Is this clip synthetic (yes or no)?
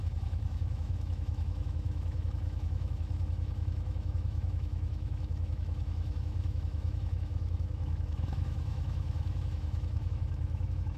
yes